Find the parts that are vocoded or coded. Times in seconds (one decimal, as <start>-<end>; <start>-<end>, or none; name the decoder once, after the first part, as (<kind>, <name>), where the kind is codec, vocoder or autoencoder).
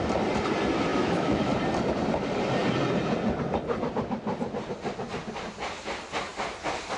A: 0.9-1.5 (autoencoder, DAC-VAE)